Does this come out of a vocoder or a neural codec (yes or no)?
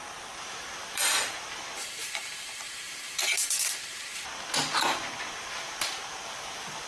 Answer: yes